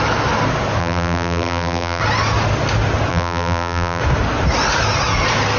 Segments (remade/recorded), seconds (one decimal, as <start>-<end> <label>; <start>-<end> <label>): 0.0-0.8 recorded; 0.8-2.0 remade; 2.0-3.1 recorded; 3.1-4.0 remade; 4.0-5.6 recorded